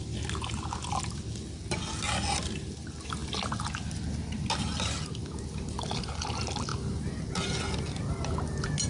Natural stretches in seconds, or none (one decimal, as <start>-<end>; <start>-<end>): 0.0-8.9